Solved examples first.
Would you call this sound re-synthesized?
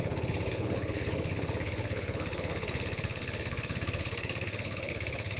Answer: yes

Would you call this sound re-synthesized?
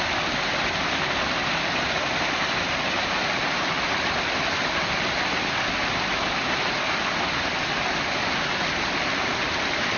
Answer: no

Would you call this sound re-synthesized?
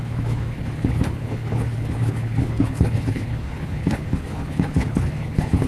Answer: yes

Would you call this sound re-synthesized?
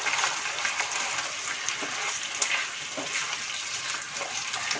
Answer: no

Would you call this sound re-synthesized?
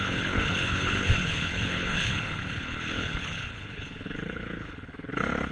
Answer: yes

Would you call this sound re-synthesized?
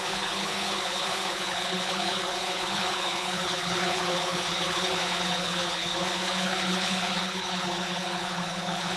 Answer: yes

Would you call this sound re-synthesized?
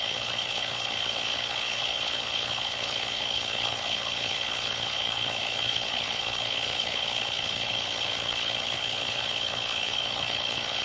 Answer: yes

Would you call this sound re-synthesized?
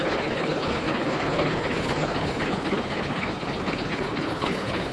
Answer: yes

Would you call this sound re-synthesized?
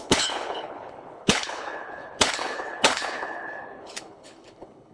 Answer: yes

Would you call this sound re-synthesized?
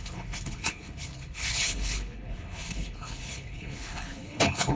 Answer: yes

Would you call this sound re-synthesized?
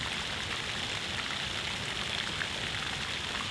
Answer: no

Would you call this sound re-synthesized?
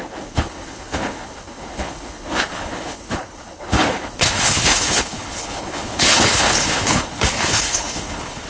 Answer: yes